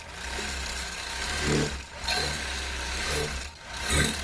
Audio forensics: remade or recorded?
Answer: recorded